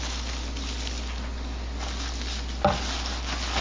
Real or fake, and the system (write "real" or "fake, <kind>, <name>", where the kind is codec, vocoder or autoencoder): real